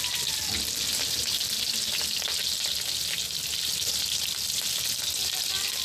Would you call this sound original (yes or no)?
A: yes